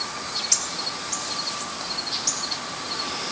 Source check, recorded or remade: recorded